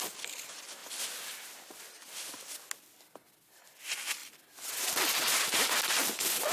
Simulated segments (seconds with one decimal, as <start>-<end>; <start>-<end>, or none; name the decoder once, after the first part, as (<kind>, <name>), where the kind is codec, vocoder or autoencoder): none